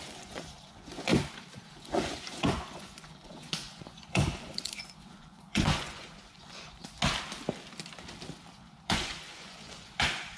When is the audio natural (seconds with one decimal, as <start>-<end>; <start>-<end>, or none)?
1.1-1.7; 7.0-8.5